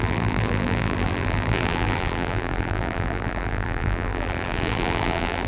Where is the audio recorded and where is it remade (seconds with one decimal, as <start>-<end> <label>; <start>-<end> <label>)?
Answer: 0.0-5.5 remade